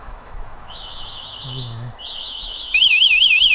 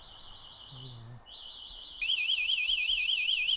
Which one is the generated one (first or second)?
first